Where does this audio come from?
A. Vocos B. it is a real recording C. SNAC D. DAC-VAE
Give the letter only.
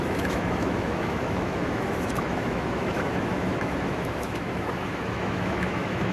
D